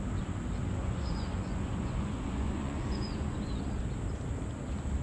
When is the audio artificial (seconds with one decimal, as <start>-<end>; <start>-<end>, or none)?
0.8-3.8